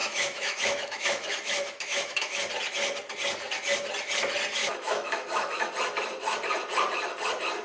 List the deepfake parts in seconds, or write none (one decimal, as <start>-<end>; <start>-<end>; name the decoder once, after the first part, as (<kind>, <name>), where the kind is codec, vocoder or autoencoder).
0.0-2.4 (autoencoder, DAC-VAE); 4.6-5.7